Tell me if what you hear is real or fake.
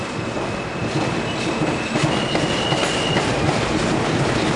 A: real